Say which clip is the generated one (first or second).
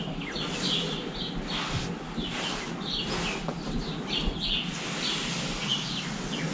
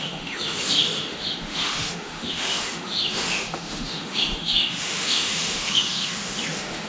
second